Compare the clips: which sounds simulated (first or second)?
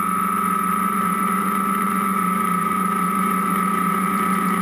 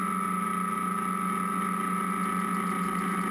first